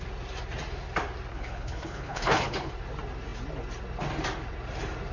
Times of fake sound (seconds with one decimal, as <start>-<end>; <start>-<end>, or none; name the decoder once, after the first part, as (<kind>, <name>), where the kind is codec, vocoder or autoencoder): 1.3-2.7 (codec, HILCodec)